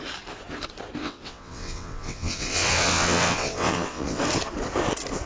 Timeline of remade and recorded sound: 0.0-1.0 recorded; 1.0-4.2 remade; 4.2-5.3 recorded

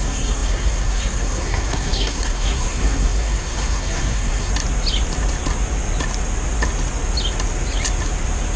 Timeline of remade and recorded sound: 0.0-4.5 remade; 4.5-8.6 recorded

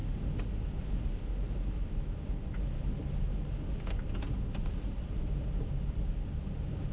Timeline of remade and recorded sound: 0.0-6.9 recorded